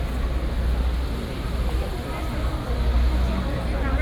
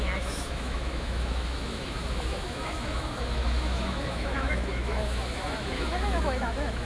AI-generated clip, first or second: second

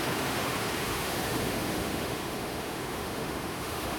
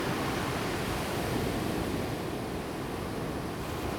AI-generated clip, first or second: first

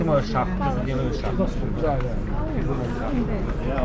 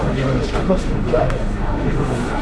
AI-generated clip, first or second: second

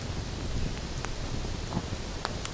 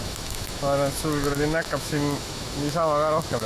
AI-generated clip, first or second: second